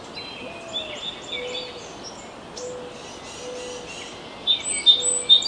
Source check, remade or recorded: recorded